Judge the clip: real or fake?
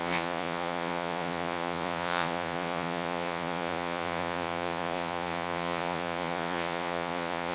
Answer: fake